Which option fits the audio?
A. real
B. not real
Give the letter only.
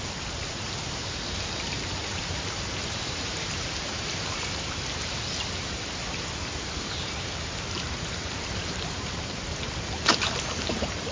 B